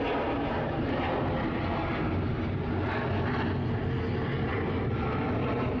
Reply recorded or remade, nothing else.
recorded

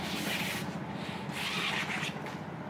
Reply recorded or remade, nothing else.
recorded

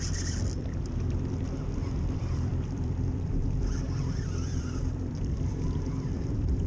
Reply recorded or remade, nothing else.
remade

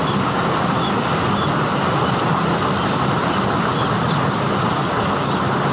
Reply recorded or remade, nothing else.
recorded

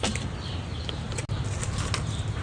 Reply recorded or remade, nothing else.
recorded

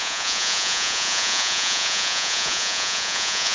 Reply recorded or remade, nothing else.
remade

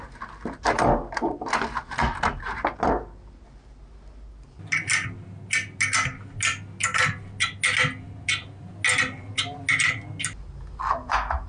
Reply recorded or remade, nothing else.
recorded